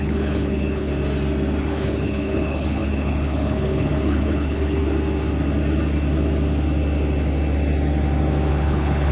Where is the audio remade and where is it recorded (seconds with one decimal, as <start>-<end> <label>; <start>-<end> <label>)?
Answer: 0.0-0.9 remade; 0.9-1.6 recorded; 1.6-4.8 remade; 4.8-8.5 recorded; 8.5-9.1 remade